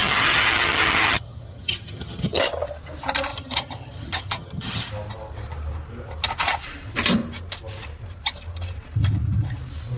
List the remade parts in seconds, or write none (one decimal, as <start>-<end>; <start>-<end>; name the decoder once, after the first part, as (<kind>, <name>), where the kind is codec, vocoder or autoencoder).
0.0-2.4 (vocoder, HiFi-GAN); 3.3-4.9